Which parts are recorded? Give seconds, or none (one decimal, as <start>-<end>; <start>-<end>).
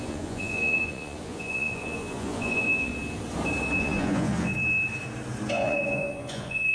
2.9-3.8; 4.5-5.5